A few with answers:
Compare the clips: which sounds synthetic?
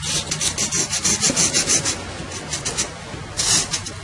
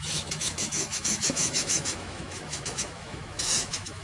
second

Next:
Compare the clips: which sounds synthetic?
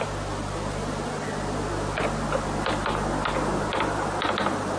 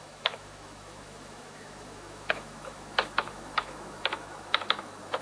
second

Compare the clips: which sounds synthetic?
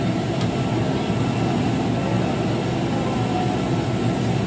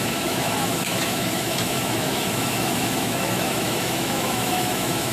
second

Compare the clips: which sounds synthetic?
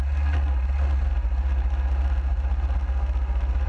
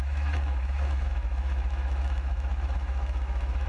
second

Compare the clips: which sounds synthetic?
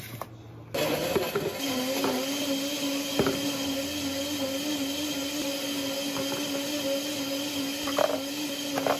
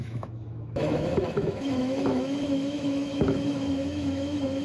second